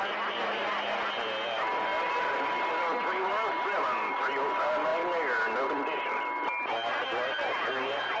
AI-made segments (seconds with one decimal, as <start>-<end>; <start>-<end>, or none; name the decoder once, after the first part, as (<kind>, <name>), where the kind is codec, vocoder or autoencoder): none